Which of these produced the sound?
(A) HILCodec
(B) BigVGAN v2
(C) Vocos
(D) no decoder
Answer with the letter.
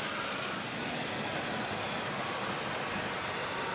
D